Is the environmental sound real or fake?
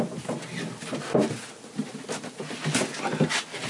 real